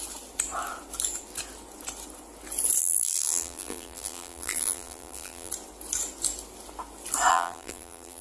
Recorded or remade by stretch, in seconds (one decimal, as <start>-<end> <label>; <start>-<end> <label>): 0.0-2.8 recorded; 2.8-5.5 remade; 5.5-7.3 recorded; 7.3-8.2 remade